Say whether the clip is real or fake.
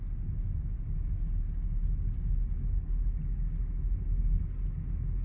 real